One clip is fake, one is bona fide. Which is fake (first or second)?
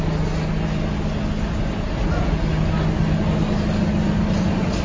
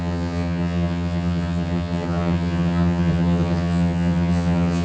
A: second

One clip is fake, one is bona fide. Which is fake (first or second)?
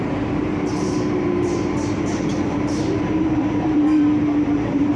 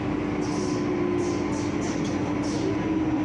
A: first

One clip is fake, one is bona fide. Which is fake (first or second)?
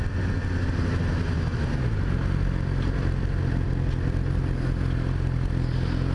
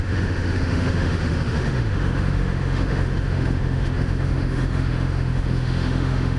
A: second